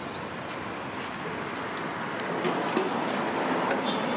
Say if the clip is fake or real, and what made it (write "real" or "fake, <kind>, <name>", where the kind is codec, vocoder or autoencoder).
real